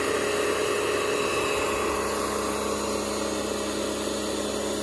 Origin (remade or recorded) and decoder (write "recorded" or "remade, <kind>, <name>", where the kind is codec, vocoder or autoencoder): recorded